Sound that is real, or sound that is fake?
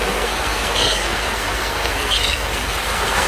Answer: fake